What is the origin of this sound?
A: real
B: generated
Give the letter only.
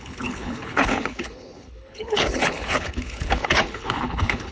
B